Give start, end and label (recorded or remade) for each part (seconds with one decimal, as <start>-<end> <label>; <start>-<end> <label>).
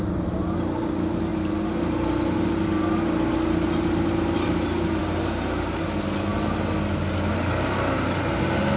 0.0-8.8 recorded